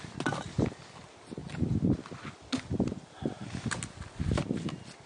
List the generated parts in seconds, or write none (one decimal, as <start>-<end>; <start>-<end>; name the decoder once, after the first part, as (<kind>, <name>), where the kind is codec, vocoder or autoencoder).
none